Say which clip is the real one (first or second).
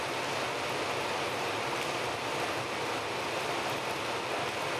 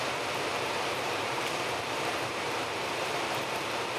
first